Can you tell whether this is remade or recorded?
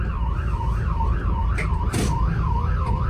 recorded